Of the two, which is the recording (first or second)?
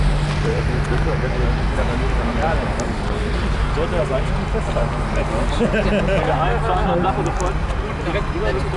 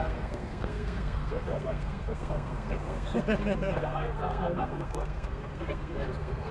first